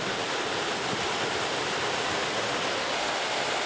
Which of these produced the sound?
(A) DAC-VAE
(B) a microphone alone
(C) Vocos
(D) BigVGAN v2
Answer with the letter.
B